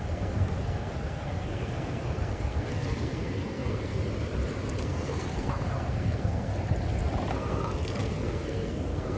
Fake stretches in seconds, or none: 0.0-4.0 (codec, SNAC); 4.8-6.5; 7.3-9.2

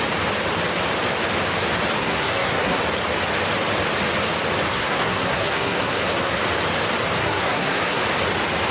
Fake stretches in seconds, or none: 2.0-2.8 (codec, SNAC); 4.7-6.4; 7.2-8.0

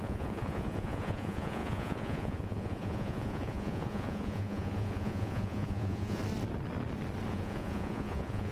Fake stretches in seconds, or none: 0.0-6.2 (vocoder, Vocos); 7.3-8.5

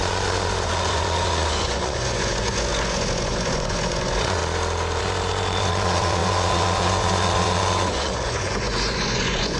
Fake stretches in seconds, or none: 0.0-4.4 (vocoder, Vocos); 5.0-9.6

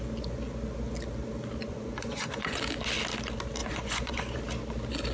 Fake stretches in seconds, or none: 1.7-2.6 (vocoder, Vocos); 3.6-4.4

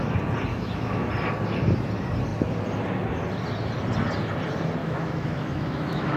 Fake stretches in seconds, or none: 0.5-1.1 (autoencoder, DAC-VAE); 4.8-6.2